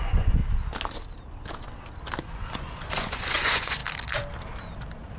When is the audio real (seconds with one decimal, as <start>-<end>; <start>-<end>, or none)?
0.4-2.3; 3.8-5.2